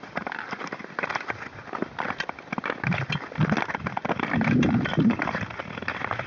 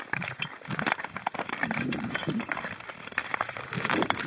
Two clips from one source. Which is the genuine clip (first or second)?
first